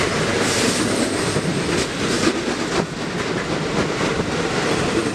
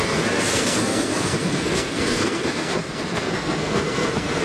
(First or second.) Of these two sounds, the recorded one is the first